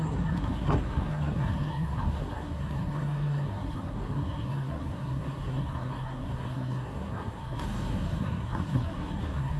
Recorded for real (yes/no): no